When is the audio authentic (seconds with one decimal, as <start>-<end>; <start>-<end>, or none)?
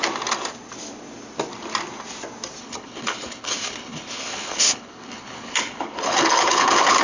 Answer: 0.0-2.6